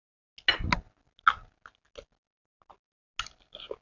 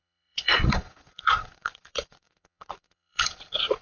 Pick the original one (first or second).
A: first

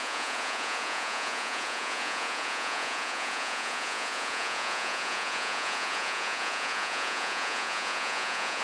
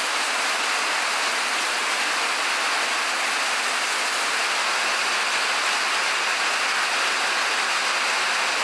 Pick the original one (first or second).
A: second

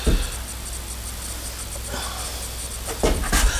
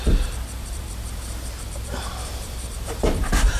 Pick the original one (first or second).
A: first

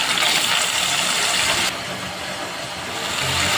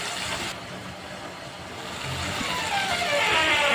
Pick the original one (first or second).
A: second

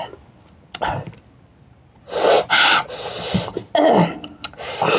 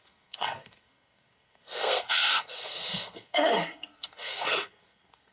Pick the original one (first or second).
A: first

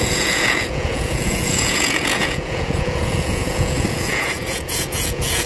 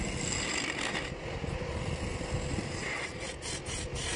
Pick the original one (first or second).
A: second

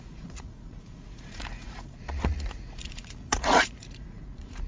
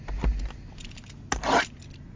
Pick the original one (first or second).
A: second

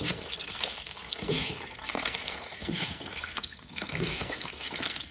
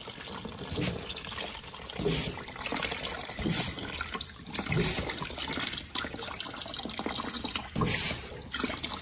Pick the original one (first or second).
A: second